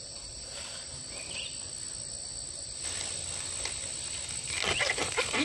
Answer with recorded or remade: recorded